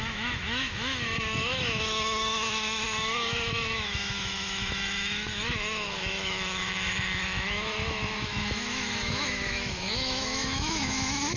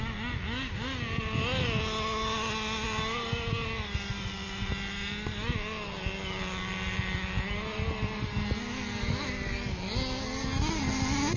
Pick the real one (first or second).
second